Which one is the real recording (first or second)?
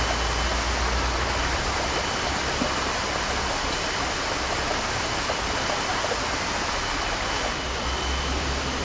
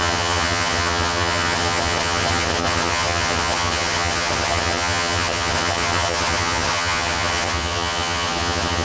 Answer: first